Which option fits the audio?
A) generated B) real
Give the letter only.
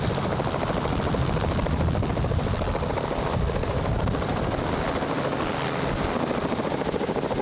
B